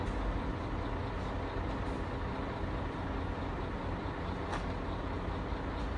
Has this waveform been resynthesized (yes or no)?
no